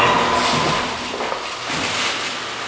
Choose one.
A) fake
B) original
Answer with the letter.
B